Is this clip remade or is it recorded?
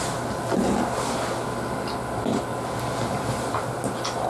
recorded